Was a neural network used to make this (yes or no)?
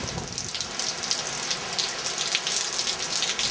no